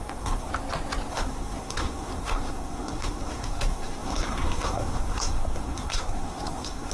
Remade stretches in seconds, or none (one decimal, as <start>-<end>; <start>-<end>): 0.0-0.5; 1.1-6.9